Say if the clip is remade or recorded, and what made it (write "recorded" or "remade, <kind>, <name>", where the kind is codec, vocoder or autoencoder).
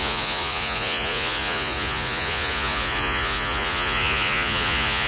remade, vocoder, Vocos